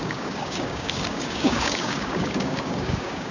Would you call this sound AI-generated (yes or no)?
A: yes